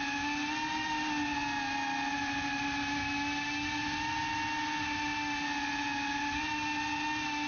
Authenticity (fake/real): real